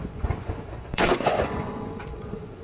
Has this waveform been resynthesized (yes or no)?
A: yes